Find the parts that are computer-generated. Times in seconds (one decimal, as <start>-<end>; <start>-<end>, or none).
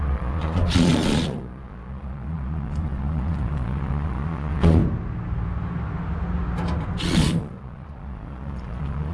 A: 0.0-4.8; 7.0-9.1